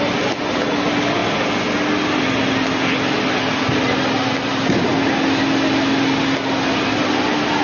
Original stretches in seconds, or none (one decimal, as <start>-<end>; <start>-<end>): 0.0-7.6